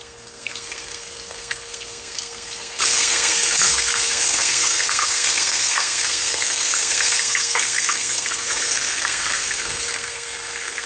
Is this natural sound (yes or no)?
no